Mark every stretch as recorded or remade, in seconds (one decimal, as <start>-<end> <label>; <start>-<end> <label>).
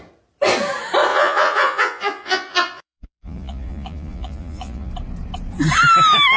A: 0.0-1.1 recorded; 1.1-4.9 remade; 4.9-6.4 recorded